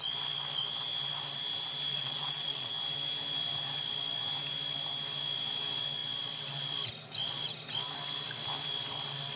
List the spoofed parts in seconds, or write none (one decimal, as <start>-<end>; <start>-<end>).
1.9-2.7